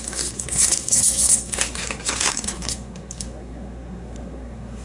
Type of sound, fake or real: fake